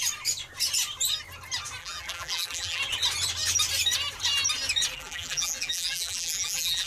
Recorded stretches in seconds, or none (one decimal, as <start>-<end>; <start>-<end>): 0.0-1.8; 2.8-4.9